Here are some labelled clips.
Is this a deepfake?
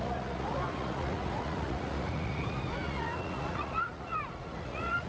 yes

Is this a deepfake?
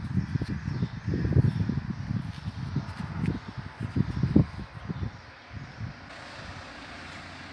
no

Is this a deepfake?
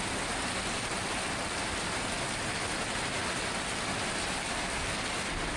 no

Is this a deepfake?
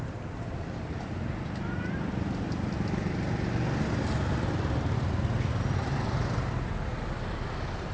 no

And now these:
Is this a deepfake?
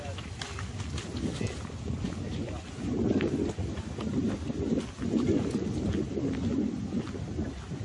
no